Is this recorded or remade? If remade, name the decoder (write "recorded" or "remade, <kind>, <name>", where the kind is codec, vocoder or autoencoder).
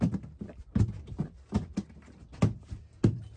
recorded